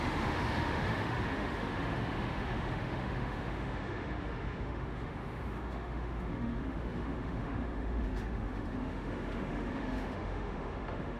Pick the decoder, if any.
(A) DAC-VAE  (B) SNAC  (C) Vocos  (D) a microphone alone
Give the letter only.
A